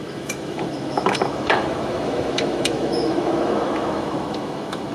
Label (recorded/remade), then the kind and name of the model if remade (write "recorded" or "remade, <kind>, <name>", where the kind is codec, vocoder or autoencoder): remade, autoencoder, DAC-VAE